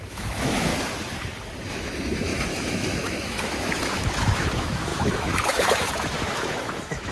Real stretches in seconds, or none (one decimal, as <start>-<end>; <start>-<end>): 0.7-1.7